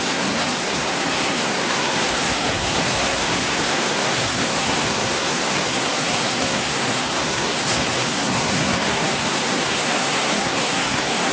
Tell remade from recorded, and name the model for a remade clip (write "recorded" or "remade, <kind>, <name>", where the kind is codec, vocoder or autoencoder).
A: remade, codec, SNAC